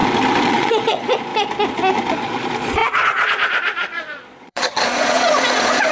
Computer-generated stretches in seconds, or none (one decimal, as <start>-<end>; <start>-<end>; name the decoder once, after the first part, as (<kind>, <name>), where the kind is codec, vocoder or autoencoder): 0.5-1.3 (vocoder, Vocos); 2.1-5.9